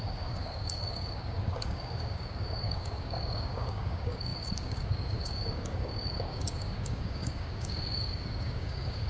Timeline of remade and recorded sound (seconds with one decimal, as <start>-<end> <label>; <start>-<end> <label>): 0.0-9.1 remade

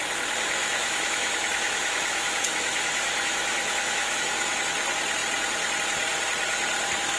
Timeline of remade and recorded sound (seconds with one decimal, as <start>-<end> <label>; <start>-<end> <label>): 0.0-0.6 recorded; 0.6-4.6 remade; 4.6-7.2 recorded

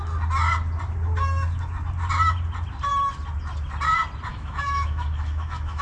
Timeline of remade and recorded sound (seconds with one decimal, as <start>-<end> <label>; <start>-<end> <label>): 0.0-4.3 recorded; 4.3-5.8 remade

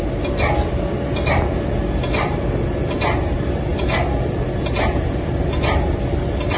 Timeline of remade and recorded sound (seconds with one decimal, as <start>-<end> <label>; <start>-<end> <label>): 0.0-6.6 recorded

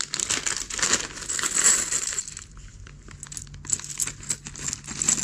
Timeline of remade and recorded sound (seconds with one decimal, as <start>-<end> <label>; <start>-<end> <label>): 0.0-5.2 recorded

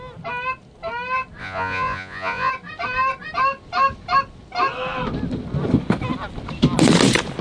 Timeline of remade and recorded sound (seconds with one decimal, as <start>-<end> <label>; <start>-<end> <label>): 0.0-1.4 recorded; 1.4-2.5 remade; 2.5-7.4 recorded

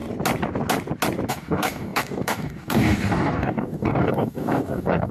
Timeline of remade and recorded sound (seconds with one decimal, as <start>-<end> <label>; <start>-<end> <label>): 0.0-1.3 recorded; 1.3-5.1 remade